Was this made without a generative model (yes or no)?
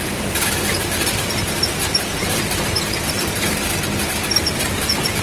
no